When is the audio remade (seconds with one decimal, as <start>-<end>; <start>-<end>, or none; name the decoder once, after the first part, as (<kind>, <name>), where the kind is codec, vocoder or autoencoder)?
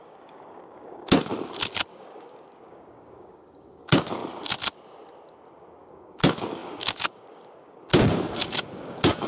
0.0-1.3 (codec, DAC); 1.9-4.2; 5.9-9.3